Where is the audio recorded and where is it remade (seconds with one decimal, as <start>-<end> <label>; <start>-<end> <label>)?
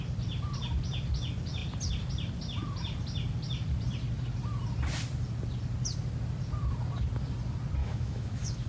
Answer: 0.0-7.8 recorded; 7.8-8.7 remade